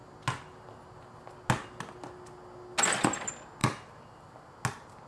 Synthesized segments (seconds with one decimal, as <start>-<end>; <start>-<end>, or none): 3.6-4.5